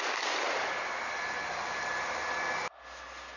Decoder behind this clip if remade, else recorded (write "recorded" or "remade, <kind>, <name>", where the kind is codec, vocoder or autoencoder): recorded